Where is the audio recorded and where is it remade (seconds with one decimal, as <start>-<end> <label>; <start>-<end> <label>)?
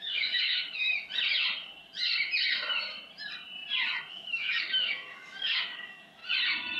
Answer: 0.0-0.9 remade; 0.9-4.1 recorded; 4.1-6.2 remade; 6.2-6.8 recorded